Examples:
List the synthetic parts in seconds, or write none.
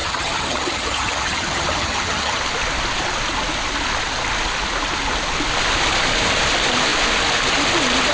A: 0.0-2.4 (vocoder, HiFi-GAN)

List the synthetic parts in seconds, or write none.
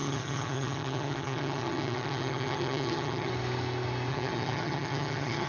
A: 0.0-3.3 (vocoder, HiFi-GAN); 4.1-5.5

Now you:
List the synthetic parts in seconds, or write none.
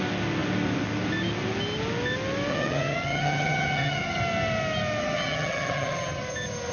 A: 2.5-4.2 (vocoder, HiFi-GAN); 5.0-6.2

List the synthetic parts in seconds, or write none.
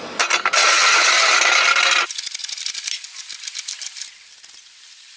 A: 0.6-1.3 (vocoder, HiFi-GAN)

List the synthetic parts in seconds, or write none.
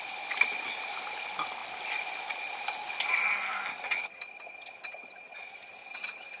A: 3.7-6.4 (vocoder, HiFi-GAN)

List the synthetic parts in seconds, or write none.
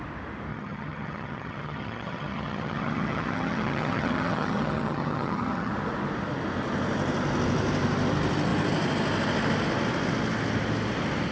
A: 0.5-5.7 (vocoder, HiFi-GAN)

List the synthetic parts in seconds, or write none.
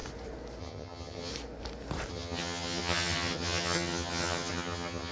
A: 0.6-1.3 (vocoder, HiFi-GAN); 2.1-5.1